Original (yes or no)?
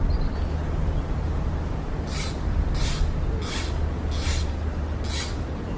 yes